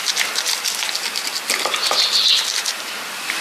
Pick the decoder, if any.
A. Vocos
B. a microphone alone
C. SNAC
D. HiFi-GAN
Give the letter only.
B